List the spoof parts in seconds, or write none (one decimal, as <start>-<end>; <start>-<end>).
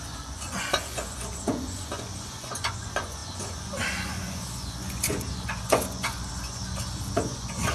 0.0-7.7